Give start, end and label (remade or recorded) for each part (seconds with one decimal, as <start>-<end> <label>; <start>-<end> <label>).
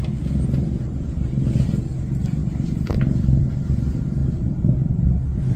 0.0-2.4 recorded; 2.4-3.5 remade; 3.5-4.2 recorded; 4.2-4.9 remade; 4.9-5.6 recorded